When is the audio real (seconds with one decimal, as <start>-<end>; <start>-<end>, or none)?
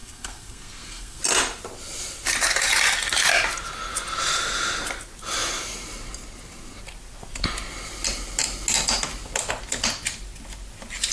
1.2-11.1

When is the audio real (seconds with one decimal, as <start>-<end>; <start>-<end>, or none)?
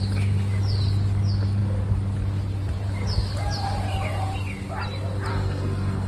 0.0-5.3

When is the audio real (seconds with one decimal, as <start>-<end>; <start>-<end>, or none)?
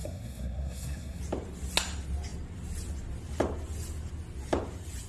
1.2-5.1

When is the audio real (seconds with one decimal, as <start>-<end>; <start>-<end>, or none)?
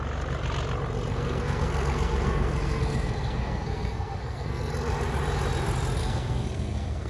0.0-1.1; 4.7-6.0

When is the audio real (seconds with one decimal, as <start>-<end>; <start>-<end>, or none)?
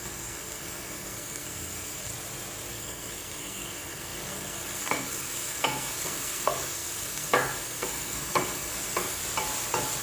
2.1-2.7; 9.2-10.0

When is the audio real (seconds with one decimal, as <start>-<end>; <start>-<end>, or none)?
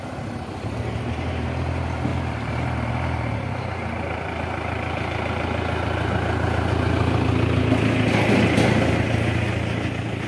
0.0-10.3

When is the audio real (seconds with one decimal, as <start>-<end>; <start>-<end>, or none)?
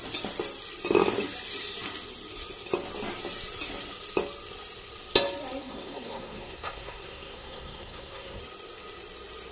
0.0-5.6; 8.4-9.5